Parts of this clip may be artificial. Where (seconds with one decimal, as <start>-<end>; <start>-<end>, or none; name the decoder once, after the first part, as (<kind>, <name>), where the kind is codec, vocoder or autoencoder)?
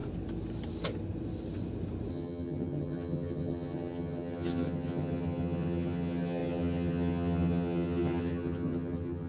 2.1-9.3 (vocoder, HiFi-GAN)